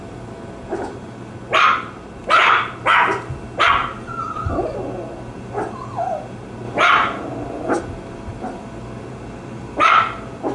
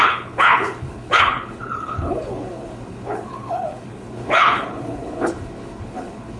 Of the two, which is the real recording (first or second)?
first